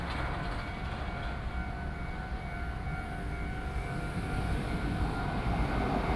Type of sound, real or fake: real